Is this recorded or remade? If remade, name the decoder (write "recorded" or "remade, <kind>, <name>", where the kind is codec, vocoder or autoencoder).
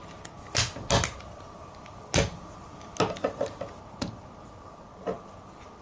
recorded